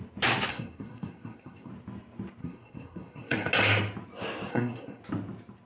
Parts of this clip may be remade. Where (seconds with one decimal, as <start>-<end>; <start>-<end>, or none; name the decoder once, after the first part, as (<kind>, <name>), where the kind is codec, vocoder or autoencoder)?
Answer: 0.5-1.7 (codec, SNAC); 2.4-3.5; 4.5-5.0